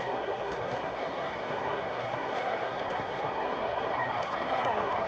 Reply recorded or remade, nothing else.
remade